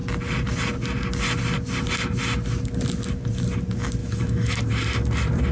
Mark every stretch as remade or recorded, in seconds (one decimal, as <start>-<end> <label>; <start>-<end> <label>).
0.0-4.0 recorded; 4.0-4.6 remade; 4.6-5.5 recorded